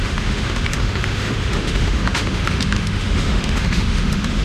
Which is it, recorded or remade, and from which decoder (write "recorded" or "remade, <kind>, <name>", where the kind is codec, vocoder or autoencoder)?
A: remade, autoencoder, DAC-VAE